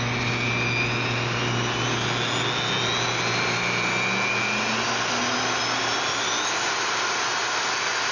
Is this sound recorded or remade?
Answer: recorded